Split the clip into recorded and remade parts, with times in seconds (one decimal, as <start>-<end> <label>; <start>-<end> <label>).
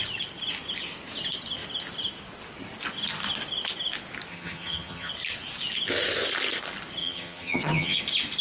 0.0-4.3 recorded; 4.3-5.1 remade; 5.1-7.0 recorded; 7.0-8.0 remade; 8.0-8.4 recorded